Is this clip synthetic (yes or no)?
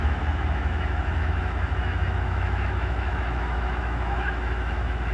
yes